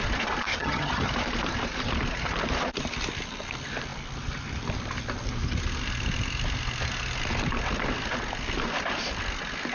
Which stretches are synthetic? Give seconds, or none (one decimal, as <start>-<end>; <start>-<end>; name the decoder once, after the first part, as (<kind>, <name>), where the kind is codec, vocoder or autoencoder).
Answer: 0.5-1.1 (vocoder, HiFi-GAN)